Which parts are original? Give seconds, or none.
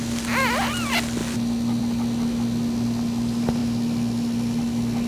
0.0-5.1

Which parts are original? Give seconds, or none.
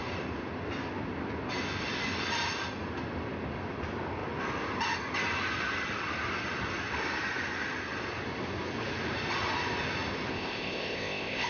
0.0-10.3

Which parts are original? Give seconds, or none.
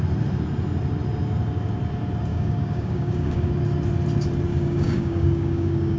0.0-2.3; 3.5-4.5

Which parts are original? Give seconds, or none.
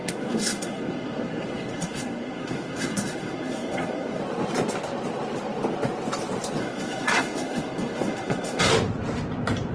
4.2-6.6; 8.7-9.7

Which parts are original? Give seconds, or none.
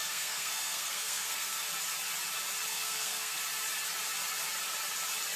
1.7-2.7; 3.4-5.4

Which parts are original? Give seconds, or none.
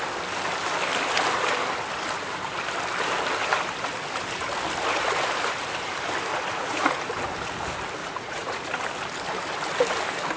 0.0-6.3; 7.0-8.0; 8.6-10.4